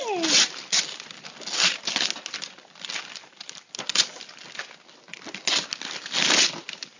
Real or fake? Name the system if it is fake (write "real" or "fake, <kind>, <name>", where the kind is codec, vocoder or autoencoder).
real